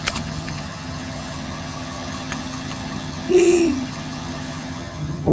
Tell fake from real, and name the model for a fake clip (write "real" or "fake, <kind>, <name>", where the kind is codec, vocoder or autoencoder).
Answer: fake, vocoder, HiFi-GAN